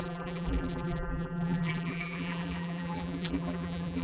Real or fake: fake